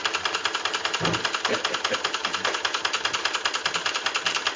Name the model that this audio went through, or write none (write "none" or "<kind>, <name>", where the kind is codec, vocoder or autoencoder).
none